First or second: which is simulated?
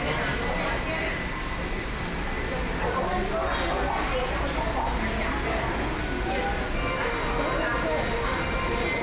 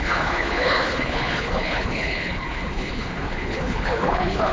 second